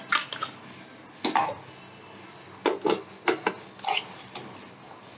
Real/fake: real